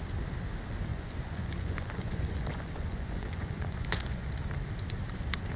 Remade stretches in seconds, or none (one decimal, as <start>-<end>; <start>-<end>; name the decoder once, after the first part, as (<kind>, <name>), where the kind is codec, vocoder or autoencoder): 0.9-4.3 (vocoder, Vocos)